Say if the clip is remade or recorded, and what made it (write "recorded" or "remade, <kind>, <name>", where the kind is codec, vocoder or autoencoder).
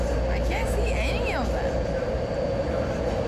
recorded